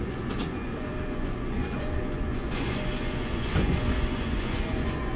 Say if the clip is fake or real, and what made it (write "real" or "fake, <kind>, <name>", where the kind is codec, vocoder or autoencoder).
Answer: fake, vocoder, Vocos